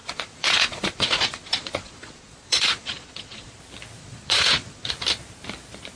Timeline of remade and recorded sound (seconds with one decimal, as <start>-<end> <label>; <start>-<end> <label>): 0.0-3.6 remade; 3.6-4.0 recorded; 4.0-4.9 remade; 4.9-6.0 recorded